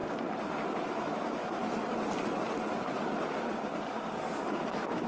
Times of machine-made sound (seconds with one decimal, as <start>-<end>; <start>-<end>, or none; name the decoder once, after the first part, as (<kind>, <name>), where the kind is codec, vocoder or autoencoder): 0.9-1.6 (autoencoder, DAC-VAE); 4.4-5.1